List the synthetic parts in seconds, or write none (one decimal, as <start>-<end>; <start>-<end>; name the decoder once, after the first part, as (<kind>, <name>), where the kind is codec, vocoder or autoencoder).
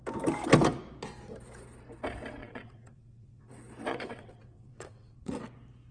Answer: 2.4-3.5 (vocoder, WaveNeXt); 3.9-5.4